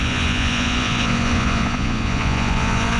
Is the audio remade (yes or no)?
yes